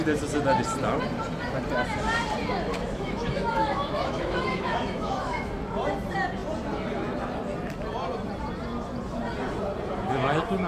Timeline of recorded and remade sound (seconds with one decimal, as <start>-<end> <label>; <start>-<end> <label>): 0.0-2.7 recorded; 2.7-5.5 remade; 5.5-10.7 recorded